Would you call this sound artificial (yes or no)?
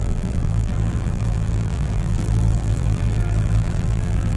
yes